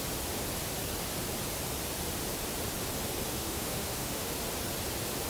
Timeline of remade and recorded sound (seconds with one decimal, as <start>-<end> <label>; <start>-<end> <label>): 0.0-3.3 recorded; 3.3-4.3 remade; 4.3-5.3 recorded